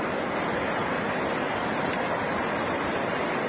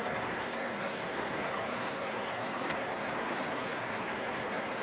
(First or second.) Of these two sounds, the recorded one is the first